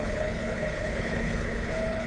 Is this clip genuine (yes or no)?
no